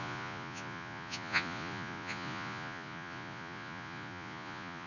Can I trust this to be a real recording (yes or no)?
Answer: no